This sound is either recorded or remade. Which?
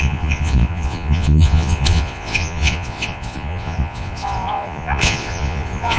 remade